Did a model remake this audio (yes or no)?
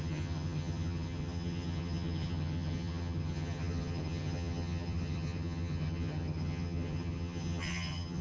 yes